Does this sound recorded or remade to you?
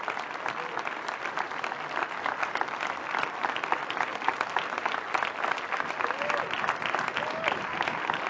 recorded